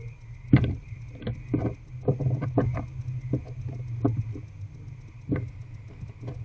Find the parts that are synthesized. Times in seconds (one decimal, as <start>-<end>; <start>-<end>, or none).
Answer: none